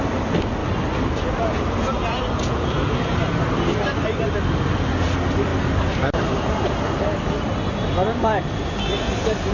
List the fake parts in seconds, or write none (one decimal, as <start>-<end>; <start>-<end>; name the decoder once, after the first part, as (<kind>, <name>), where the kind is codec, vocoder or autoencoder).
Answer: none